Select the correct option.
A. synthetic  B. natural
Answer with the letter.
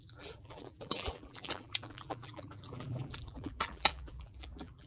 A